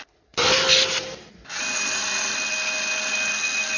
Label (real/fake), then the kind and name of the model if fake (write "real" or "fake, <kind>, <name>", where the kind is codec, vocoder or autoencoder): real